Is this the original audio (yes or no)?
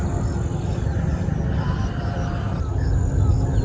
yes